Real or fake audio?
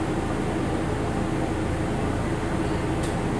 real